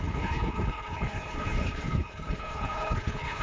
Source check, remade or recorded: remade